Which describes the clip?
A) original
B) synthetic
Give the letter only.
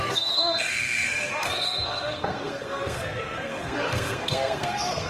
B